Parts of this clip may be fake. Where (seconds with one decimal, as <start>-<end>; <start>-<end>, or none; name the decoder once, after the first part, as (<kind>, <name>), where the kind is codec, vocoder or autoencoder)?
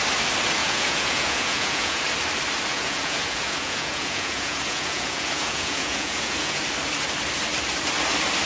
0.6-2.0 (vocoder, Vocos); 2.7-6.6